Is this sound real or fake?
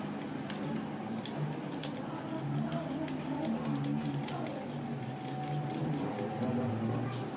real